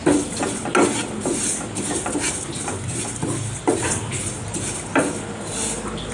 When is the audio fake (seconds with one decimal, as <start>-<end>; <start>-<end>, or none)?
none